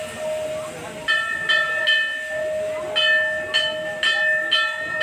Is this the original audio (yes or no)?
yes